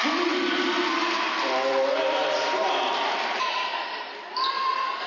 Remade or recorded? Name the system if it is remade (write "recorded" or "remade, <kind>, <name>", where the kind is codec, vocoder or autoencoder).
remade, vocoder, BigVGAN v2